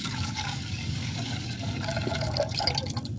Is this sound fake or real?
fake